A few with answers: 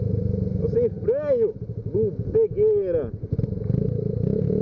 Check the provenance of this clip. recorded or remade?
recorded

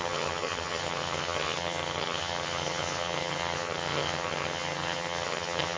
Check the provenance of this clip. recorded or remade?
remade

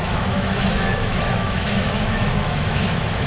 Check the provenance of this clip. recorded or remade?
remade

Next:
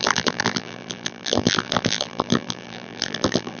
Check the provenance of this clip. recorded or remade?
remade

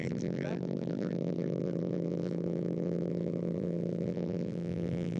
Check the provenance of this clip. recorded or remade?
remade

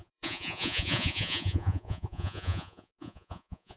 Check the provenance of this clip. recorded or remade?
remade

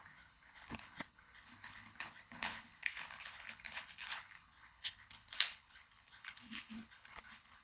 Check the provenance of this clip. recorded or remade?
remade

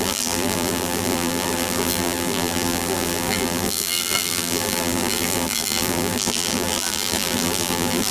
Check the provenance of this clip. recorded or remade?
remade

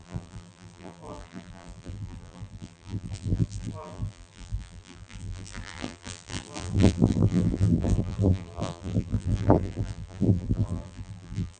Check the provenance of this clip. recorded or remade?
remade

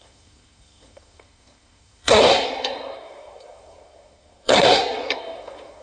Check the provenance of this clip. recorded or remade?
remade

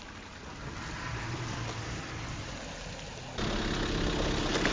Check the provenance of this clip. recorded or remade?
recorded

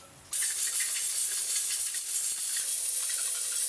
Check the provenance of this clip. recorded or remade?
recorded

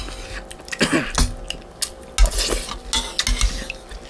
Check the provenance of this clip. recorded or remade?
recorded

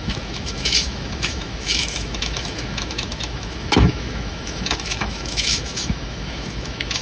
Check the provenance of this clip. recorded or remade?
remade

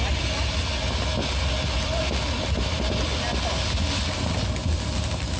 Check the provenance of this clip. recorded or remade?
recorded